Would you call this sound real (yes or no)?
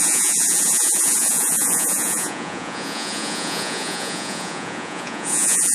no